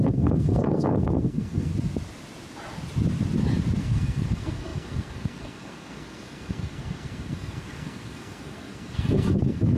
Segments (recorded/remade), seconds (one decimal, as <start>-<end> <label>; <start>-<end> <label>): 0.0-1.7 remade; 1.7-3.8 recorded; 3.8-9.8 remade